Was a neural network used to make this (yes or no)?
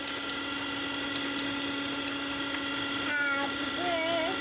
no